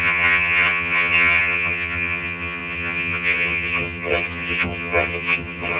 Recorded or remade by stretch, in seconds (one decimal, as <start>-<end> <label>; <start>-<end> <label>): 0.0-5.8 remade